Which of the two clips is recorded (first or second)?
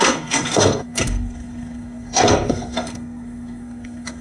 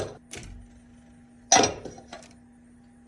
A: second